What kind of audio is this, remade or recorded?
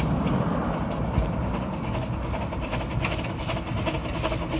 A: recorded